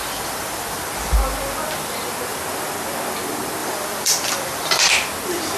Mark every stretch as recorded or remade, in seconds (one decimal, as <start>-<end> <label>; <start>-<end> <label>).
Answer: 0.0-0.9 remade; 0.9-3.6 recorded; 3.6-4.9 remade; 4.9-5.6 recorded